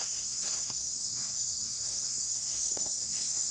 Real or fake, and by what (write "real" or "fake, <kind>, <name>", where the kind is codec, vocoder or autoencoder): fake, codec, SNAC